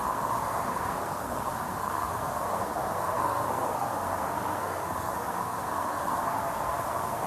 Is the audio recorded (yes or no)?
no